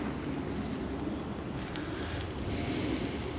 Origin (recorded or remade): recorded